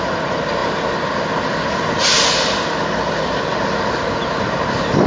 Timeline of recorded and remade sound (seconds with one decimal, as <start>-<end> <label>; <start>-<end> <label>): 0.0-5.1 recorded